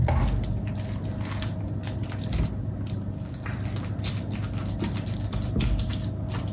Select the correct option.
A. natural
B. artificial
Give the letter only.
A